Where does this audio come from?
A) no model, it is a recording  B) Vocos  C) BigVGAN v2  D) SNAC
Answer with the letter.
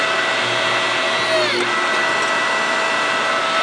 A